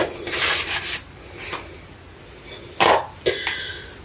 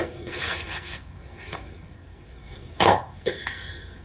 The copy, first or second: second